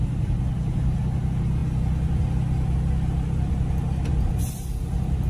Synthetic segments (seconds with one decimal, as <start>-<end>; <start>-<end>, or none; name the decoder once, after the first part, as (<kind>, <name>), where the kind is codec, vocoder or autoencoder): none